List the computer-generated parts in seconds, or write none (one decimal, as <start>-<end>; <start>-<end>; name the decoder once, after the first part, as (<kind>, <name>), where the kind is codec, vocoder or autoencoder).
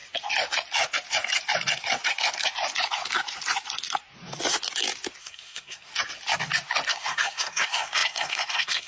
5.2-5.9 (codec, SNAC); 6.9-8.9